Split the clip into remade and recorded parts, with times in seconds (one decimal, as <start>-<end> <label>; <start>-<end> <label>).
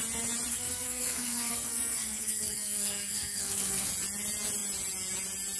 0.0-0.5 recorded; 0.5-3.9 remade; 3.9-5.6 recorded